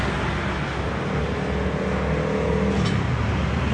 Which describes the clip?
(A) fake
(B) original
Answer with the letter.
B